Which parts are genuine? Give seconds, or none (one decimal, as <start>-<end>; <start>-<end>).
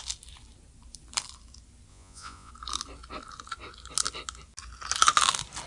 0.0-1.9; 2.5-5.7